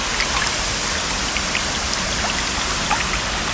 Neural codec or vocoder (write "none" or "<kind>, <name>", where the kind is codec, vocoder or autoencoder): none